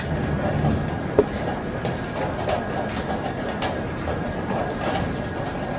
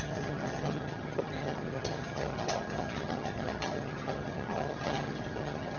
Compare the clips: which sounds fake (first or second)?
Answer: second